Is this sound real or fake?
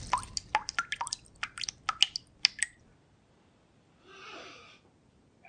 real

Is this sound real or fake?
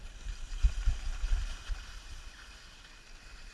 real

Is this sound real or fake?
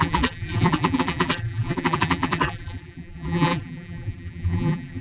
fake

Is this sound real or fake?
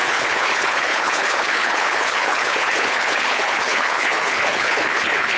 fake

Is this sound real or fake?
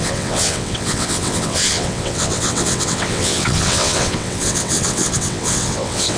fake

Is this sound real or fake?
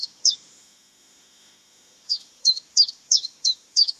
fake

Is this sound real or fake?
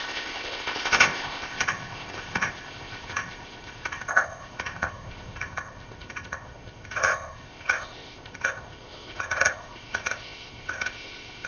fake